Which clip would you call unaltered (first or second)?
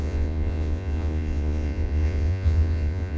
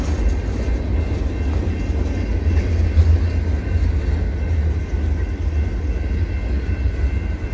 second